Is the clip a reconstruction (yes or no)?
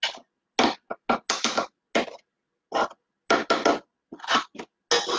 no